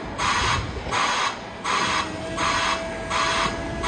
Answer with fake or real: real